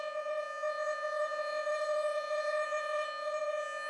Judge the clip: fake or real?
fake